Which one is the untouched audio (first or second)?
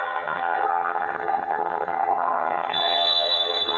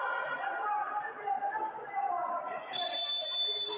second